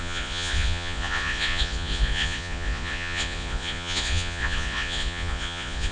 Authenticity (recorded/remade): remade